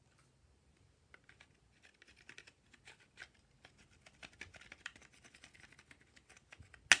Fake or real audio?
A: real